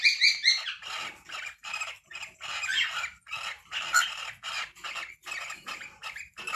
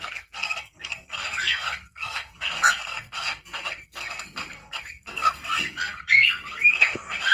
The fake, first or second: second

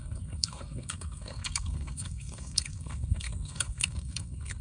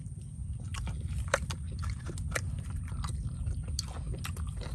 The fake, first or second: first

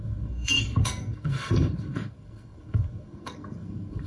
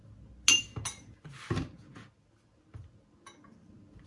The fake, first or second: first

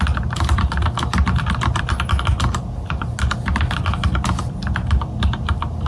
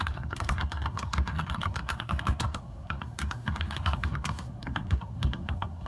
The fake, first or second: second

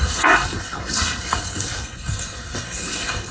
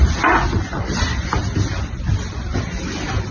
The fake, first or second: first